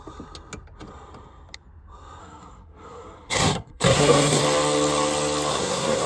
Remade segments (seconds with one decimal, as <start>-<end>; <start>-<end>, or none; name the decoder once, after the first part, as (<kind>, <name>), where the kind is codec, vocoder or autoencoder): 2.2-4.4 (codec, SNAC); 5.5-6.1